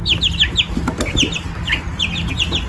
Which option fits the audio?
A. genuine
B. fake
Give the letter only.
A